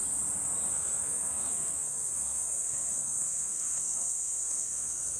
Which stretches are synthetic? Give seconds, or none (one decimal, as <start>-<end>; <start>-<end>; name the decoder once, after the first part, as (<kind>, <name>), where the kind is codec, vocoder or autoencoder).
0.7-5.2 (codec, SNAC)